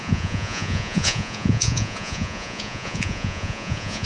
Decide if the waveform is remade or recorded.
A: remade